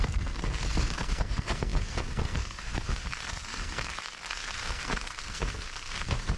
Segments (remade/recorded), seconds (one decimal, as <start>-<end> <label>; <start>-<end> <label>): 0.0-6.4 remade